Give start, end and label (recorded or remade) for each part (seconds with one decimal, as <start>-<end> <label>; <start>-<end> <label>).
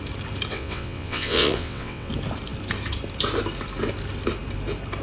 0.0-0.5 recorded; 0.5-2.1 remade; 2.1-5.0 recorded